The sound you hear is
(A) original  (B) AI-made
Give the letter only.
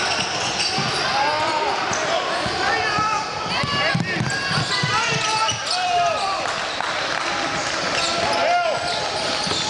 A